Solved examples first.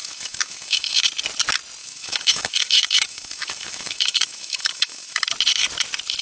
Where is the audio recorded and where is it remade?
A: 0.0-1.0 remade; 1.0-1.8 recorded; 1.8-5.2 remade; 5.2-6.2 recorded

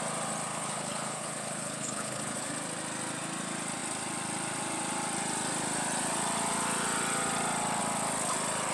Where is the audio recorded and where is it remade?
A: 0.0-0.5 recorded; 0.5-2.5 remade; 2.5-8.7 recorded